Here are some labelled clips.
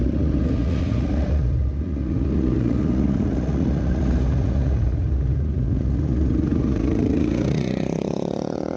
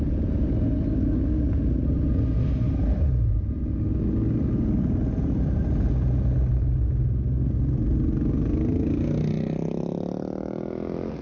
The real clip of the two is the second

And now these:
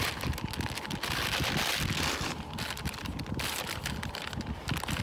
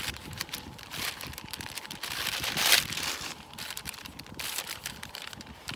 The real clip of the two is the first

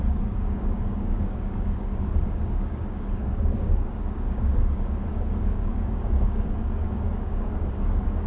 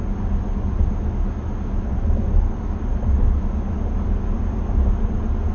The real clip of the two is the second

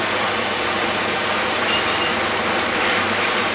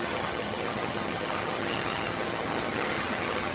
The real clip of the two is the first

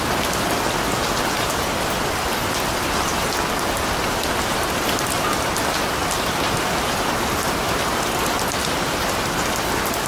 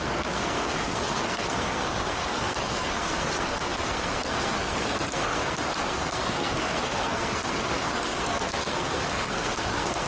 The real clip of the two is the first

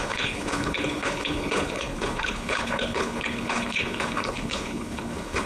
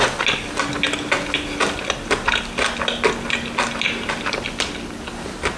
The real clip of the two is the second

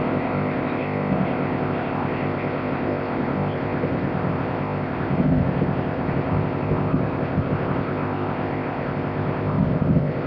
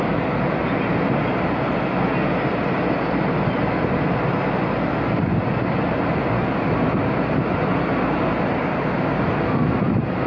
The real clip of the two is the second